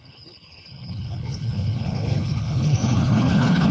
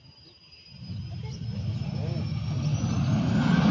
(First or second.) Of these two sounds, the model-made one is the first